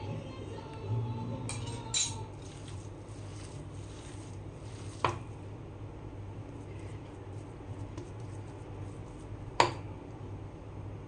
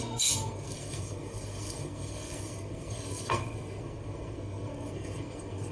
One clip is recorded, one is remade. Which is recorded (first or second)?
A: first